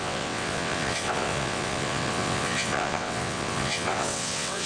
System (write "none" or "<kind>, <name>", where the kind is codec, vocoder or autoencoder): vocoder, WaveNeXt